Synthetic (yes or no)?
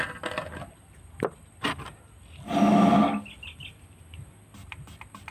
no